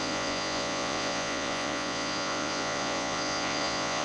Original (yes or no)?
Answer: no